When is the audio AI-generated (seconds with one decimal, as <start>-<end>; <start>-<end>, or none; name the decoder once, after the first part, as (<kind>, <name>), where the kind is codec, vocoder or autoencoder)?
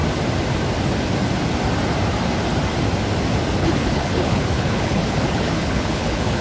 3.6-6.4 (codec, HILCodec)